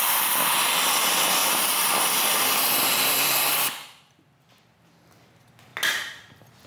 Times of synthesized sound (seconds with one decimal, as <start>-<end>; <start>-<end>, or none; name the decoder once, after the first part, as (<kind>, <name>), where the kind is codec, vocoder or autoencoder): none